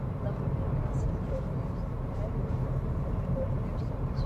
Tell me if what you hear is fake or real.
fake